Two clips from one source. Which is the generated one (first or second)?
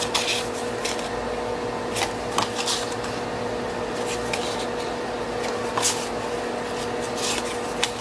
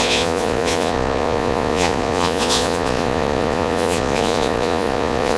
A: second